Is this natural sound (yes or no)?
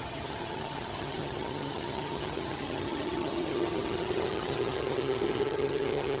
no